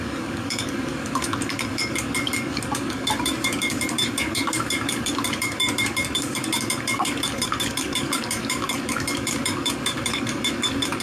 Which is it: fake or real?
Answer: fake